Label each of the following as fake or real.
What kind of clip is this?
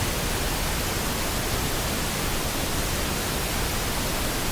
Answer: real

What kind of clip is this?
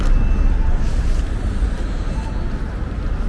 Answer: real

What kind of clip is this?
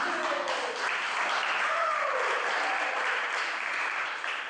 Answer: real